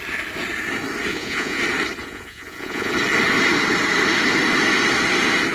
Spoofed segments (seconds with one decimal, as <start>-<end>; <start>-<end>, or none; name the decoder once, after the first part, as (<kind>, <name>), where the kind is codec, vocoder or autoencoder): 1.1-1.6 (vocoder, Vocos); 2.0-2.9